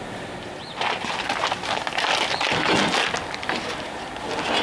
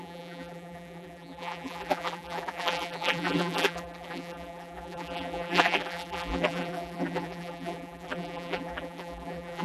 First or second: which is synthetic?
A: second